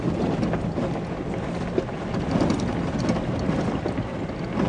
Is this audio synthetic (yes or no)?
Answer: no